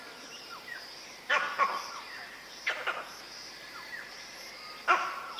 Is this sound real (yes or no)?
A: no